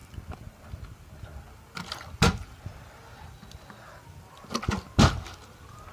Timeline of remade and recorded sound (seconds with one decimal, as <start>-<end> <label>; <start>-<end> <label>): 0.0-5.9 recorded